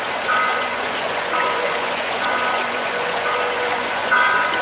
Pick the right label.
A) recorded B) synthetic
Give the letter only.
B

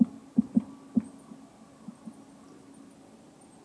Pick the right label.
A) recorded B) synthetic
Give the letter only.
A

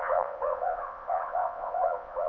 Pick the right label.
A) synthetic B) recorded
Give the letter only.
A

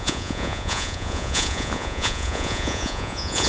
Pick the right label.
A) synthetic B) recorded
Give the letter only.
A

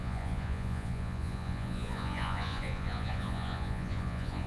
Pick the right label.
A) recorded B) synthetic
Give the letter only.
B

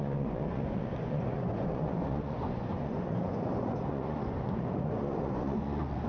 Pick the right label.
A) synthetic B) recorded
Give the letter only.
A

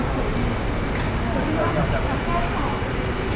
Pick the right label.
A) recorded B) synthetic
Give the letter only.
A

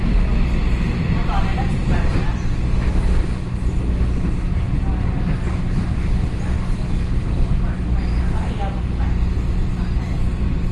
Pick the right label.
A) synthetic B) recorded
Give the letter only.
B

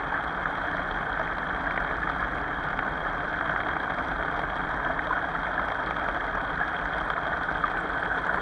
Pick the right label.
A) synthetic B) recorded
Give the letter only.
B